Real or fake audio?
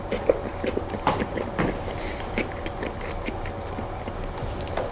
fake